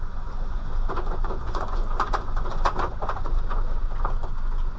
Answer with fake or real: fake